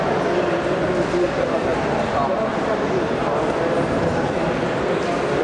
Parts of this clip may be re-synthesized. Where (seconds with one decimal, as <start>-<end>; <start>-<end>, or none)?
1.7-4.9